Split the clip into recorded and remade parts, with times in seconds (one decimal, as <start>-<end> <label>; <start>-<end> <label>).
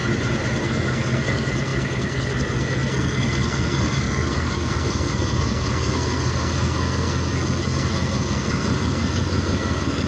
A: 0.0-0.6 recorded; 0.6-10.1 remade